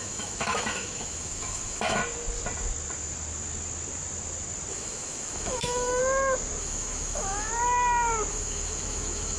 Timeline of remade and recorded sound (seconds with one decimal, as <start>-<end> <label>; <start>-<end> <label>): 0.0-2.0 remade; 2.0-4.7 recorded; 4.7-6.0 remade; 6.0-6.6 recorded; 6.6-7.5 remade; 7.5-8.3 recorded; 8.3-9.4 remade

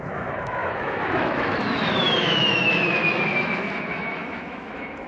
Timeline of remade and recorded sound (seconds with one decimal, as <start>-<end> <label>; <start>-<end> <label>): 0.0-5.1 remade

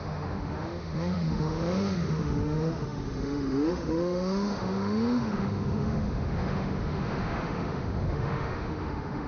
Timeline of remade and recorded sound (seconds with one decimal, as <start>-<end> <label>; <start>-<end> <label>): 0.0-9.3 remade

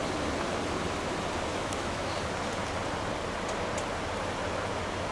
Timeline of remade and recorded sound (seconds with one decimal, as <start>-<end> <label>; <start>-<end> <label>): 0.0-1.5 recorded; 1.5-2.1 remade; 2.1-5.1 recorded

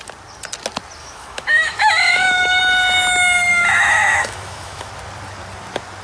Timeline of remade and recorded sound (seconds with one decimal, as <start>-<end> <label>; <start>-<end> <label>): 0.0-1.0 recorded; 1.0-2.6 remade; 2.6-3.5 recorded; 3.5-4.9 remade; 4.9-6.0 recorded

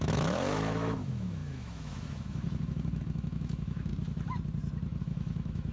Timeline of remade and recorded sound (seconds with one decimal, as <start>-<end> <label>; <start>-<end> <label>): 0.0-3.9 remade; 3.9-5.0 recorded; 5.0-5.7 remade

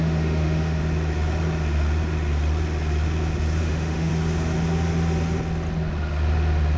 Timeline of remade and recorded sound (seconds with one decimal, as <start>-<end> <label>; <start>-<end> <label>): 0.0-0.8 remade; 0.8-3.6 recorded; 3.6-4.1 remade; 4.1-6.8 recorded